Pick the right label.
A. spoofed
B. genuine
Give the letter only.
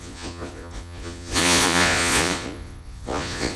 A